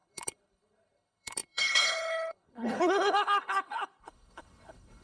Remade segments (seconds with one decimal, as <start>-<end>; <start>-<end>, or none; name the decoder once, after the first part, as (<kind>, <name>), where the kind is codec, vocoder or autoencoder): 0.0-5.0 (codec, HILCodec)